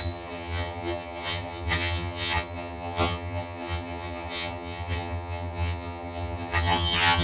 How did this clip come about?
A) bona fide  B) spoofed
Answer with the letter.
B